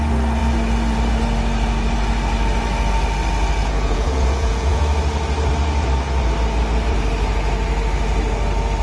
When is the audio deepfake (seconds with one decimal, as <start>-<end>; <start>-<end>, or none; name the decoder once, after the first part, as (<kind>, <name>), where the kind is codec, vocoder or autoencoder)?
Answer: 3.6-4.8 (vocoder, Vocos)